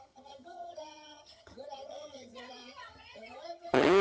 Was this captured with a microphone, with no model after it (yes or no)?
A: no